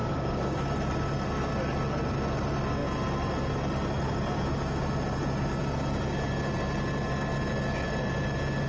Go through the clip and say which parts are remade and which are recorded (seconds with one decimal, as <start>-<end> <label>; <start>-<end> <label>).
0.0-0.6 remade; 0.6-8.7 recorded